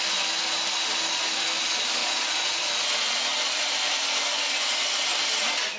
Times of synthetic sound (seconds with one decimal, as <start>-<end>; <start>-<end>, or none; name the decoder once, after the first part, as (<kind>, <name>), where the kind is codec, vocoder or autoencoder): 2.0-2.7 (vocoder, Vocos)